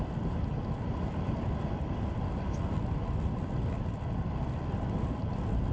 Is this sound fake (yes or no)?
no